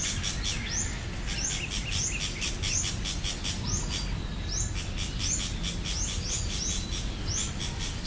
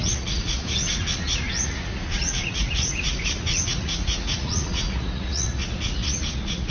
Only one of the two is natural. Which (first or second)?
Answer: first